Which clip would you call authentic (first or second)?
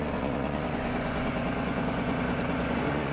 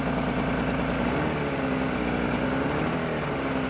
second